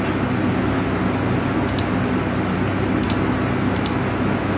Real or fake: real